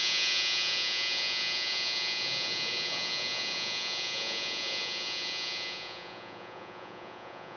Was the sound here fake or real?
fake